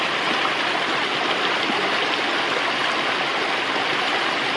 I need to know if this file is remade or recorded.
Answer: recorded